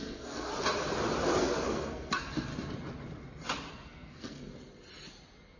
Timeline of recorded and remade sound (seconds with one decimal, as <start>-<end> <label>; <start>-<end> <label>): 0.0-0.5 remade; 0.5-1.4 recorded; 1.4-2.5 remade; 2.5-3.7 recorded; 3.7-4.5 remade; 4.5-5.6 recorded